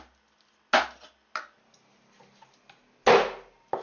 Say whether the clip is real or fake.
real